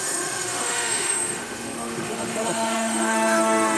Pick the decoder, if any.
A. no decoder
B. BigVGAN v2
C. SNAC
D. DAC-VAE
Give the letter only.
D